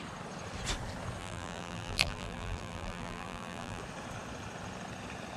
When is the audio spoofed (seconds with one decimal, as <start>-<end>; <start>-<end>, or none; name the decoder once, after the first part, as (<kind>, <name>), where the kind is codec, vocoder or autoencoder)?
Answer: 1.2-3.8 (vocoder, BigVGAN v2)